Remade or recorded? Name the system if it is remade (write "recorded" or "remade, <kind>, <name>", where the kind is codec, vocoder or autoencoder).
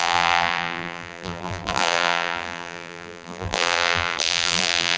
remade, vocoder, BigVGAN v2